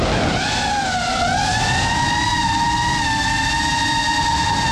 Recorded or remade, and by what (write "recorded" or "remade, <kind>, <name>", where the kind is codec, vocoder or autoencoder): recorded